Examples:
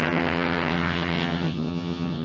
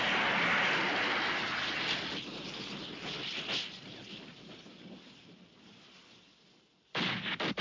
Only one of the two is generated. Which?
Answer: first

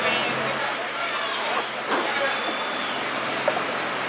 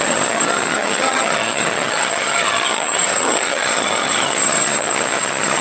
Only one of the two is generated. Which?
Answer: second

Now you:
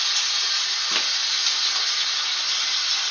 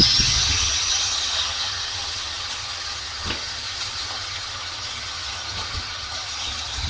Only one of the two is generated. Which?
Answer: second